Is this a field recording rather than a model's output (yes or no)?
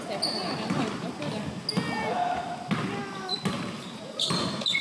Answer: yes